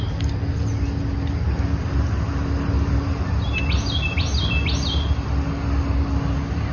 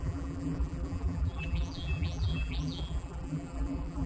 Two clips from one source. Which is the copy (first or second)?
second